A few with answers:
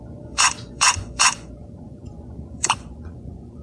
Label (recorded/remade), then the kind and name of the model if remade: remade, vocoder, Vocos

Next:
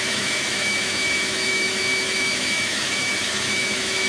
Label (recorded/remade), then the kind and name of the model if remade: remade, autoencoder, DAC-VAE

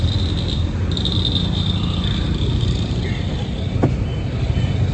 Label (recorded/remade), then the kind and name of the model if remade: recorded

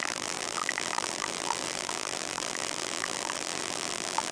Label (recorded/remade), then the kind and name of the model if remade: remade, vocoder, BigVGAN v2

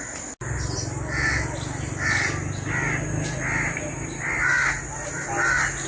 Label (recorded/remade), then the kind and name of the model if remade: recorded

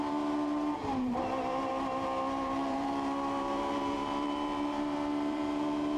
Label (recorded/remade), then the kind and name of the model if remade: remade, vocoder, BigVGAN v2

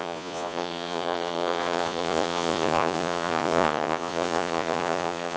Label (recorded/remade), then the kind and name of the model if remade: remade, vocoder, Vocos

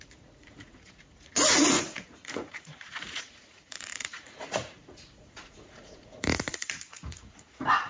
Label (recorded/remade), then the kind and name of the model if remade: remade, vocoder, Vocos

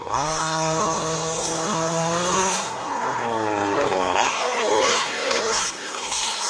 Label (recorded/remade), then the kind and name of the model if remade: remade, codec, SNAC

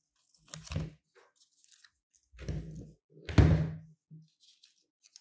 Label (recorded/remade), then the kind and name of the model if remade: recorded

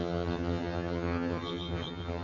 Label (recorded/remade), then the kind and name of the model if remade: remade, vocoder, HiFi-GAN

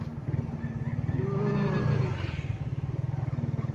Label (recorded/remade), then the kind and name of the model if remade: recorded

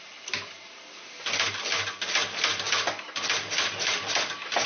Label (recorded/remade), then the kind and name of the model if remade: recorded